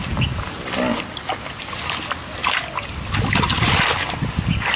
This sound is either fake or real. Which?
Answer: real